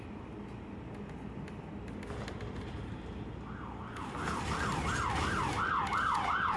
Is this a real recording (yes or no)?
yes